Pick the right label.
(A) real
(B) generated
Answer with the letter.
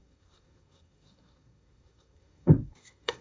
B